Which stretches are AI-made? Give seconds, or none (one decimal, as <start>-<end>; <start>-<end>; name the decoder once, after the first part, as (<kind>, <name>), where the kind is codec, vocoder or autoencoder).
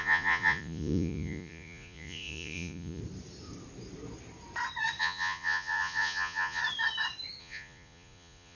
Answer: 0.0-3.0 (vocoder, Vocos); 5.0-6.6; 7.4-8.6